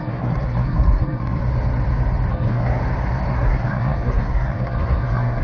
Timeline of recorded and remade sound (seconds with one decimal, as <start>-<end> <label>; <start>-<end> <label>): 0.0-1.4 remade; 1.4-2.3 recorded; 2.3-2.8 remade; 2.8-3.3 recorded; 3.3-5.4 remade